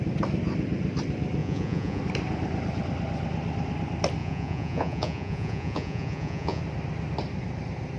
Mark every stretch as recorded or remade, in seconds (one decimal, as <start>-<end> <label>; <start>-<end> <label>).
0.0-1.4 recorded; 1.4-2.0 remade; 2.0-4.2 recorded; 4.2-6.6 remade; 6.6-8.0 recorded